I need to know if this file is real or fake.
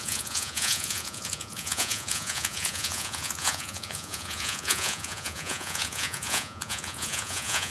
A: fake